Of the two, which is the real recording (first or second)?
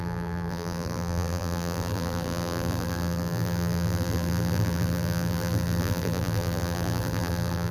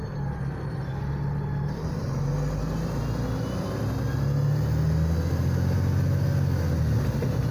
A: second